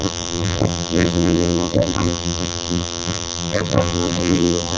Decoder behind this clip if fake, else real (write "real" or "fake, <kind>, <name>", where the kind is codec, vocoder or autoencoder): fake, vocoder, BigVGAN v2